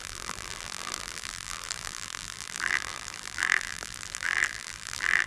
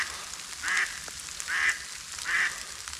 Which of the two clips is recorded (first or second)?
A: second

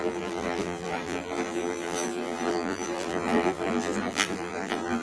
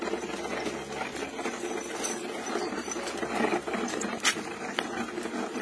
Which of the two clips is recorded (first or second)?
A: second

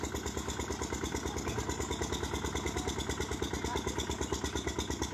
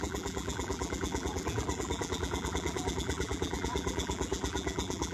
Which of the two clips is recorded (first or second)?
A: first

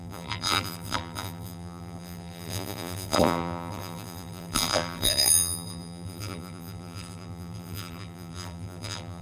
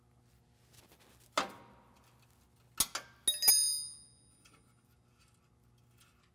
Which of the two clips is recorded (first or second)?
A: second